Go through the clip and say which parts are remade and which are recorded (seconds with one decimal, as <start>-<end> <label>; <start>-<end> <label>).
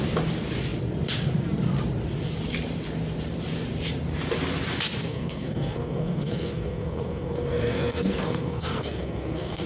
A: 0.0-5.0 recorded; 5.0-9.7 remade